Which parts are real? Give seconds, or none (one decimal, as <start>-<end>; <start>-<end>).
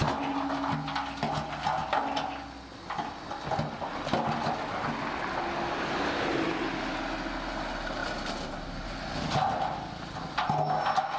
0.0-11.2